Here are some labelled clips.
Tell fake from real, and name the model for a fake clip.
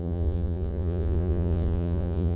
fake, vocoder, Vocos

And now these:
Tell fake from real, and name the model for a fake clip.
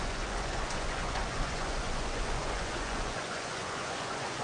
fake, vocoder, Vocos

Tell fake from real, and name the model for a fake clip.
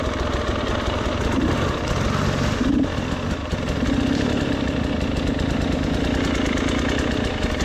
real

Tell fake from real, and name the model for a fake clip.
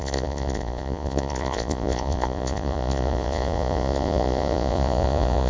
fake, vocoder, Vocos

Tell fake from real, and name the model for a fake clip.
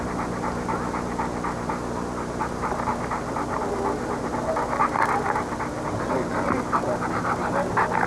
real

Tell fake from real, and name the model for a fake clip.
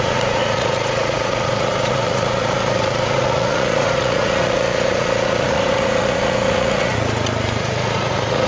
fake, vocoder, Vocos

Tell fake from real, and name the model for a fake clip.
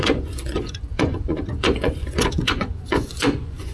fake, vocoder, Vocos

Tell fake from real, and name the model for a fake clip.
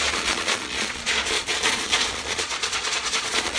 fake, vocoder, Vocos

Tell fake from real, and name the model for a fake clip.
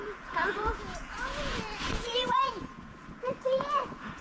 fake, vocoder, Vocos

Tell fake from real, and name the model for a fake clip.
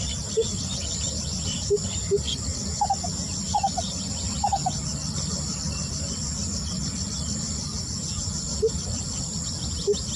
real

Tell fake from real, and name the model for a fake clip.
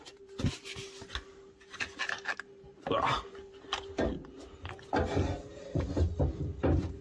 real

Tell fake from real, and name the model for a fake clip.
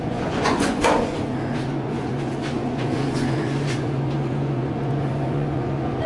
fake, vocoder, Vocos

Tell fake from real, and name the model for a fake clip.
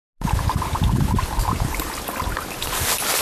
real